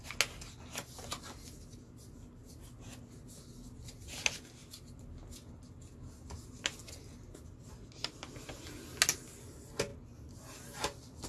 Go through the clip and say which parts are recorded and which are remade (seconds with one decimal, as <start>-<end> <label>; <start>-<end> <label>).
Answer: 0.0-11.3 recorded